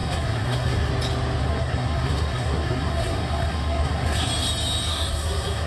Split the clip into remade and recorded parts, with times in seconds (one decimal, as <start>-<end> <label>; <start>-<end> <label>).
0.0-0.9 remade; 0.9-1.4 recorded; 1.4-4.3 remade; 4.3-4.9 recorded; 4.9-5.7 remade